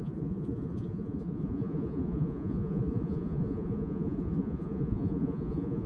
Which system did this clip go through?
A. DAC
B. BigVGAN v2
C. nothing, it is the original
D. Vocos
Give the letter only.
D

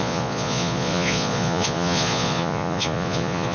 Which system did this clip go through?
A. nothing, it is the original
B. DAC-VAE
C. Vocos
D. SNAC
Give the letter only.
C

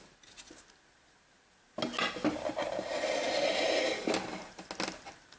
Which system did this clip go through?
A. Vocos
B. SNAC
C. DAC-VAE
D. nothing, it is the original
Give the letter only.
D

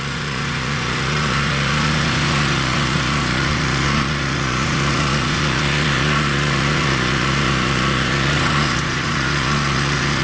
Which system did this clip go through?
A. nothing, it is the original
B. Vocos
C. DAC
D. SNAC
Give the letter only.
B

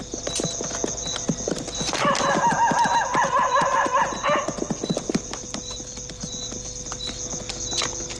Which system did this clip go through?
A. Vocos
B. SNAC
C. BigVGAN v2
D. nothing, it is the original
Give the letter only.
D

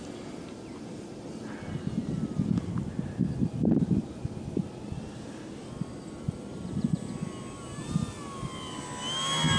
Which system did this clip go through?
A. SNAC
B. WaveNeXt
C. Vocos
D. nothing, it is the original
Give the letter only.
D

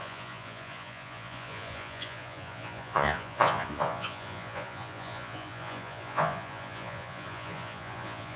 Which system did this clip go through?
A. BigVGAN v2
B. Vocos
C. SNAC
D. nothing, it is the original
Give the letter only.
B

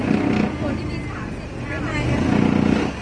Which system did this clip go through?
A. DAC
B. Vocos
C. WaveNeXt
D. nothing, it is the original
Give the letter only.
D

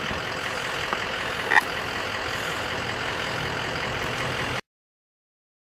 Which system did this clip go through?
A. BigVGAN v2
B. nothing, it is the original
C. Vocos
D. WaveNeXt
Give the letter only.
B